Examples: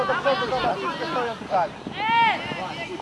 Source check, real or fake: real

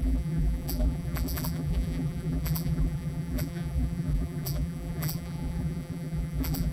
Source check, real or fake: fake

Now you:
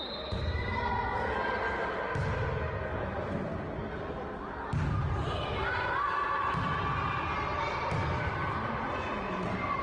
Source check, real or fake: real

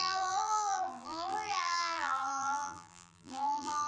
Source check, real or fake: fake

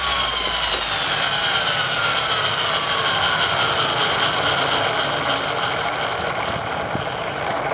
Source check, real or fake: real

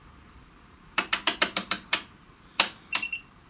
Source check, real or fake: fake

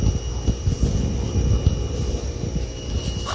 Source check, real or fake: real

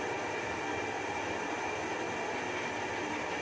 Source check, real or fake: real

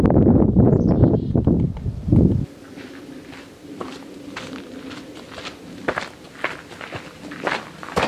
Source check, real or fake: fake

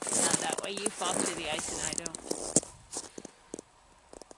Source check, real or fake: real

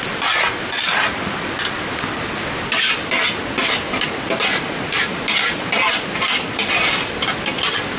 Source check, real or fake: real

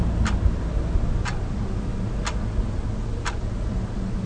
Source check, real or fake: real